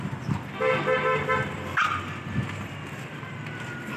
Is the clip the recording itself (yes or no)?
yes